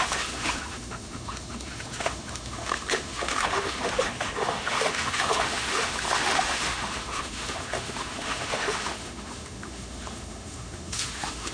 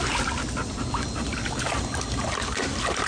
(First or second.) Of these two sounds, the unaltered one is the second